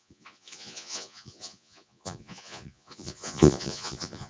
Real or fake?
fake